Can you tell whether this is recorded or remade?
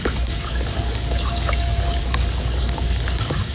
remade